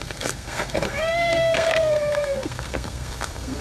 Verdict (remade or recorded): remade